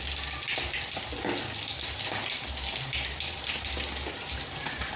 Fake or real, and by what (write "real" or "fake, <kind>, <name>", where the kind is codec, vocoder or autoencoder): real